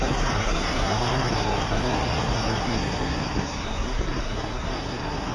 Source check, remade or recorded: remade